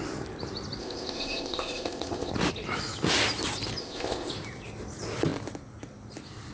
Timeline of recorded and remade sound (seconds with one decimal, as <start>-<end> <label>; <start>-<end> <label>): 0.0-0.8 recorded; 0.8-2.3 remade; 2.3-3.8 recorded; 3.8-4.3 remade; 4.3-6.5 recorded